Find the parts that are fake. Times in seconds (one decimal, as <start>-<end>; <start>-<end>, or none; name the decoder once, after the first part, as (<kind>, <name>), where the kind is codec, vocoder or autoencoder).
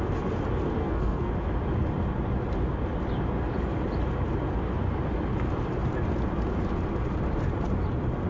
0.8-1.3 (codec, SNAC)